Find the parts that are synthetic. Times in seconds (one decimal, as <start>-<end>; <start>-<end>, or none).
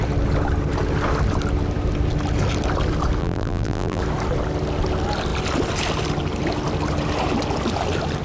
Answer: 3.2-4.0